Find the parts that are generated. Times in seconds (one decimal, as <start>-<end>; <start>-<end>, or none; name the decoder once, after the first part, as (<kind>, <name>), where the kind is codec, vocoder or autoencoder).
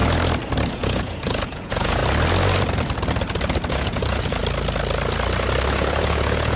0.7-2.0 (vocoder, Vocos); 3.7-4.4; 5.7-6.6